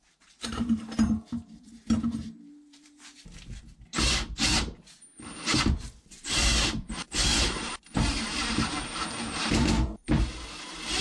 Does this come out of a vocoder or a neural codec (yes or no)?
yes